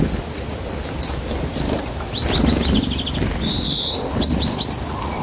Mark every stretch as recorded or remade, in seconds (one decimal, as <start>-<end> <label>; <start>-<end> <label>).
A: 0.0-5.2 recorded

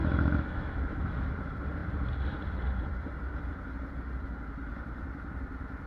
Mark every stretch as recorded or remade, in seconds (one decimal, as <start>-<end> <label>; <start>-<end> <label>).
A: 0.0-1.3 remade; 1.3-5.9 recorded